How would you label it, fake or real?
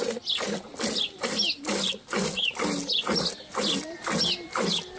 real